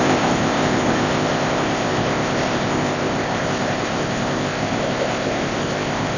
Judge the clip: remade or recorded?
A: remade